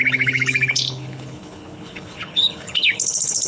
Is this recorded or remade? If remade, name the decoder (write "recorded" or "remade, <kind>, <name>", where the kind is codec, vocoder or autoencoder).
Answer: remade, codec, HILCodec